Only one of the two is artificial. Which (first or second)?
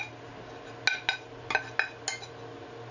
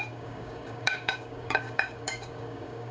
second